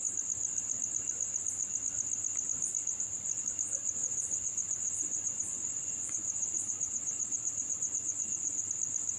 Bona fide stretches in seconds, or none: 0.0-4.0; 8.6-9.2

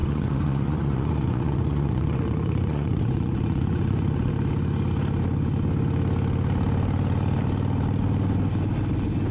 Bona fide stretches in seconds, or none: 4.3-9.3

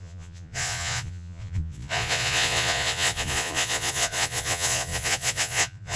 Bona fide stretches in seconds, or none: none